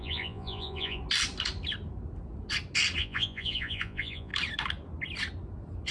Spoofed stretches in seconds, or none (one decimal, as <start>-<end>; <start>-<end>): 0.0-1.0; 3.0-4.3